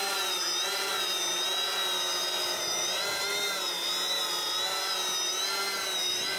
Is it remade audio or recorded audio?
recorded